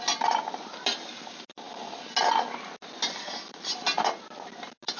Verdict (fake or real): real